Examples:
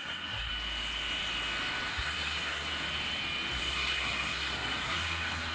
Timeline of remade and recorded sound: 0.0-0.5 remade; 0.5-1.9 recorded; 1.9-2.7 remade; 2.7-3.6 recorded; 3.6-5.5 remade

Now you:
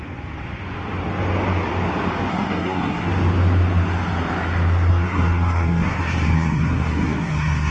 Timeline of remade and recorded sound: 0.0-2.3 recorded; 2.3-3.1 remade; 3.1-4.9 recorded; 4.9-7.7 remade

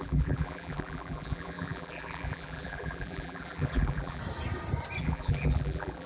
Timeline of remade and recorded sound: 0.0-4.2 remade; 4.2-5.0 recorded; 5.0-6.1 remade

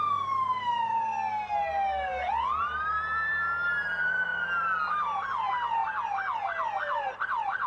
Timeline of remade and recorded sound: 0.0-1.1 remade; 1.1-2.6 recorded; 2.6-5.8 remade; 5.8-7.2 recorded; 7.2-7.7 remade

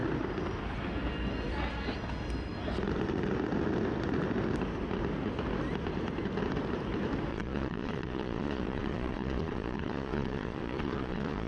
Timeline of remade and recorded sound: 0.0-7.3 recorded; 7.3-11.5 remade

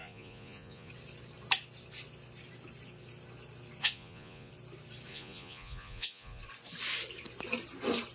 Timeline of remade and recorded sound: 0.0-0.9 remade; 0.9-3.8 recorded; 3.8-4.5 remade; 4.5-5.1 recorded; 5.1-6.4 remade; 6.4-8.1 recorded

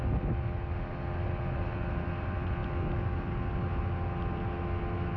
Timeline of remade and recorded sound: 0.0-5.2 recorded